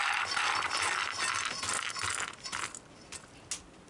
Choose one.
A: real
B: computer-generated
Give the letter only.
A